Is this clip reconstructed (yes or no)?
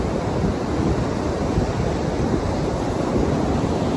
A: no